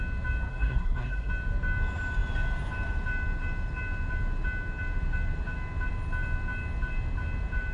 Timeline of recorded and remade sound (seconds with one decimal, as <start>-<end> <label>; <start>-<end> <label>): 0.0-0.5 recorded; 0.5-1.3 remade; 1.3-7.7 recorded